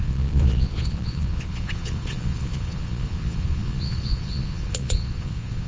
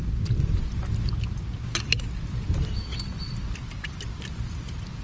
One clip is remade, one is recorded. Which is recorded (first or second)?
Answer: second